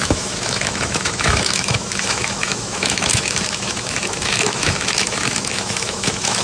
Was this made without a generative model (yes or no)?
no